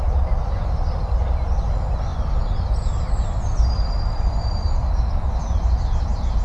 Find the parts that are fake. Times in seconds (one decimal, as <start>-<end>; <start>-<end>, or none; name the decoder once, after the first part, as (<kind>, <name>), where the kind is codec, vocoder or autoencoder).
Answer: none